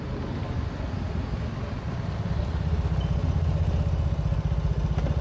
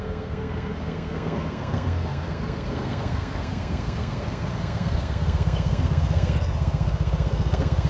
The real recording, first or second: first